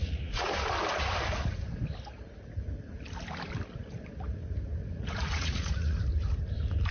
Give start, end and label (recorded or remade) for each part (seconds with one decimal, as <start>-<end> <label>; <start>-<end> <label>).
0.0-0.5 remade; 0.5-4.8 recorded; 4.8-6.0 remade; 6.0-6.9 recorded